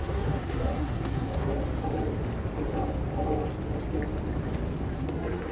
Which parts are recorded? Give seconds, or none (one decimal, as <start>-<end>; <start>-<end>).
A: 1.6-4.9